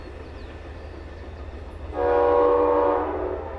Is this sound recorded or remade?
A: recorded